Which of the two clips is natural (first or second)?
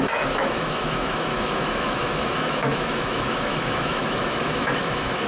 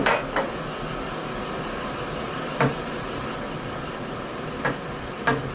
second